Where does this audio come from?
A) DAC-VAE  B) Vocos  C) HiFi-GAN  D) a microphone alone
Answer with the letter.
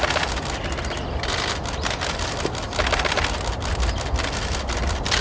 D